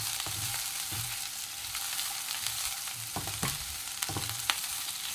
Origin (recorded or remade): remade